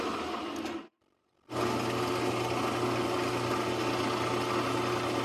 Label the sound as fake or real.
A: real